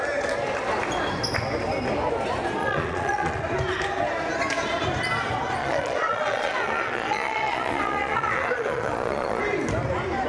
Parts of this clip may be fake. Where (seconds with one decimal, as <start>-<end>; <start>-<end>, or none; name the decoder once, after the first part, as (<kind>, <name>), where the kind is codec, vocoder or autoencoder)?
2.6-3.4 (vocoder, Vocos); 5.6-9.4